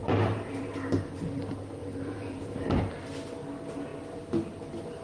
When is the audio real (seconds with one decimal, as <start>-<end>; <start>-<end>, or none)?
1.3-1.8; 2.8-5.0